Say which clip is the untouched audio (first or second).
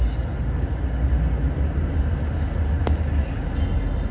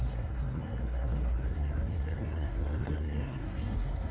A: first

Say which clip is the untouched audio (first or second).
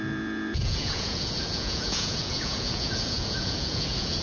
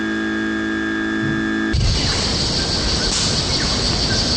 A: second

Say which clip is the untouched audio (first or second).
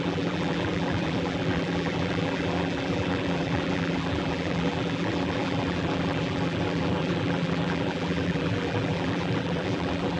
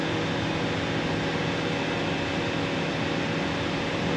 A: second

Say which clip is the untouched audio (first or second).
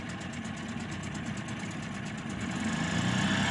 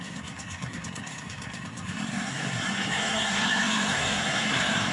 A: first